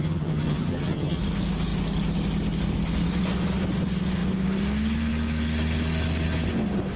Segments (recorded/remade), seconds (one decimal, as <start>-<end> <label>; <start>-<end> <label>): 0.0-1.2 remade; 1.2-7.0 recorded